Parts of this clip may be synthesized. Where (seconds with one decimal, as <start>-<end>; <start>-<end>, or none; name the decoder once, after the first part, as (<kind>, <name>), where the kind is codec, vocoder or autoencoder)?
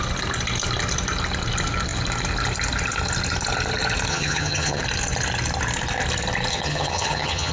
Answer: 4.1-4.8 (vocoder, HiFi-GAN); 6.5-7.5